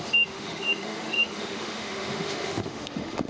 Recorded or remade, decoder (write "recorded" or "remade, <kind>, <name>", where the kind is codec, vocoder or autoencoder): remade, autoencoder, DAC-VAE